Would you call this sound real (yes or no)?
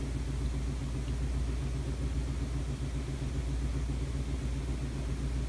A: yes